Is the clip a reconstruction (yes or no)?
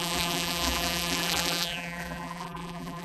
yes